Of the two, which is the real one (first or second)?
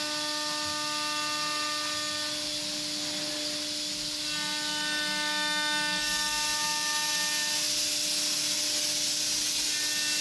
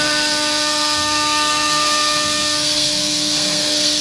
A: first